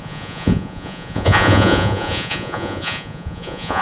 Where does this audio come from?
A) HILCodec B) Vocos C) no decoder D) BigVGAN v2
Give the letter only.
B